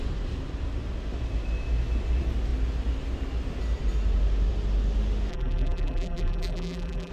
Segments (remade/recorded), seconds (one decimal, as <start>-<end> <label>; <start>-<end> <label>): 0.0-5.3 recorded; 5.3-7.1 remade